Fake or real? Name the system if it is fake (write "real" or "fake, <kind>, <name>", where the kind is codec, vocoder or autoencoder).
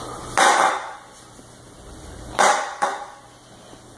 real